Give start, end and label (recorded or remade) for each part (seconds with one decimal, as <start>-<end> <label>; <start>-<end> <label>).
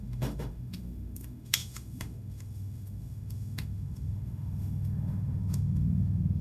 0.0-6.4 remade